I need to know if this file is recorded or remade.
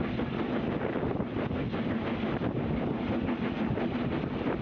recorded